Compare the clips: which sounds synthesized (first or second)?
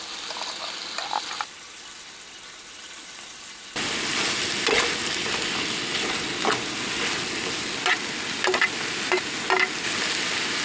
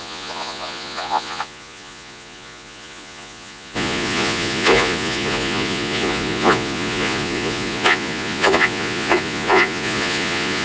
second